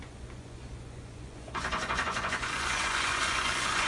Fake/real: fake